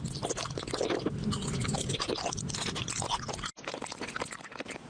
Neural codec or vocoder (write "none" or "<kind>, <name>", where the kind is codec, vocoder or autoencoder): none